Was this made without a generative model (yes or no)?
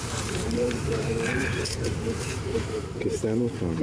no